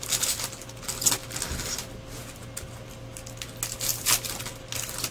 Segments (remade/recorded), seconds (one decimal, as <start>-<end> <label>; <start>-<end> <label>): 0.0-5.1 recorded